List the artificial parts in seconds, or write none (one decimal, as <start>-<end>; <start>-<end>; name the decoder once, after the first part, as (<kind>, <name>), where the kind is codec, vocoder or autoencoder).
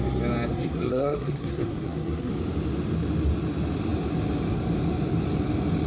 0.5-2.3 (codec, SNAC)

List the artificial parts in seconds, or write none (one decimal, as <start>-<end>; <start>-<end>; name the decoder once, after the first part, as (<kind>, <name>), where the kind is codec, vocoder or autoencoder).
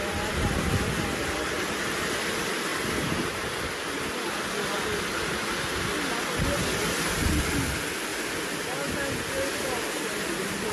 0.0-2.7 (vocoder, BigVGAN v2); 6.8-8.1; 9.3-10.7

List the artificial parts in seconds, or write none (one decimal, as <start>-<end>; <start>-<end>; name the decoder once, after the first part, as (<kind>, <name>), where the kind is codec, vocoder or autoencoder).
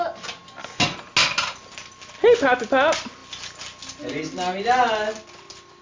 none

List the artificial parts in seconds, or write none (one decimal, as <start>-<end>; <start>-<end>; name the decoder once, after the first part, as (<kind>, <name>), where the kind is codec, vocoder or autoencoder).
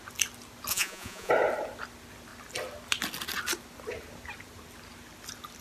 0.7-1.3 (vocoder, Vocos)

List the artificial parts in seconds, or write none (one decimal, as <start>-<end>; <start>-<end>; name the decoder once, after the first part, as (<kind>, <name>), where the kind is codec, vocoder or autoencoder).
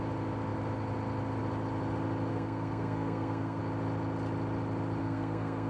2.3-3.6 (codec, SNAC); 5.0-5.7